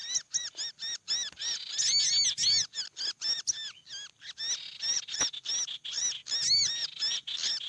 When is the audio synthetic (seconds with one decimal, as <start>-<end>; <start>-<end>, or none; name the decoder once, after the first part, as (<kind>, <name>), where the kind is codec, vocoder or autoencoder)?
none